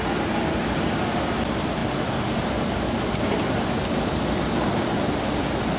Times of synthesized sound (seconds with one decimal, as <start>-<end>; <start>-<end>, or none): none

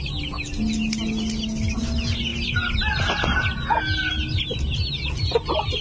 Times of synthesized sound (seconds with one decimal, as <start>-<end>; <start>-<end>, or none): none

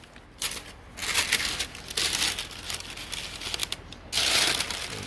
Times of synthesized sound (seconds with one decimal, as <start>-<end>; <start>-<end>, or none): none

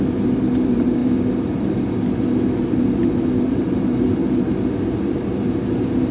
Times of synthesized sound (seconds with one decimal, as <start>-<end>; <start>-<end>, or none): none

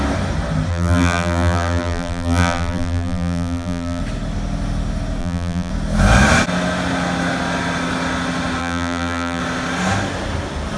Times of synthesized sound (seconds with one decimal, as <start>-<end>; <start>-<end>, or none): 0.7-4.0; 5.2-5.7; 8.6-9.4

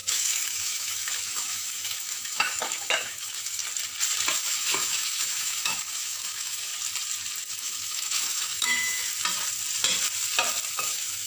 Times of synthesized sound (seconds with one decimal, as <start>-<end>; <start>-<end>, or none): 0.0-3.6; 4.3-6.7; 7.5-9.1; 10.7-11.3

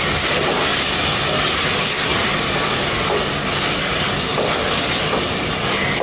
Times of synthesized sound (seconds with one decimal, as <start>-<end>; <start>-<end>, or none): none

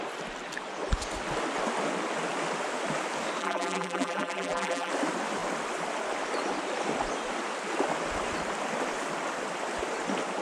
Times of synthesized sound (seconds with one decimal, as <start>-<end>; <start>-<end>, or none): 3.4-4.9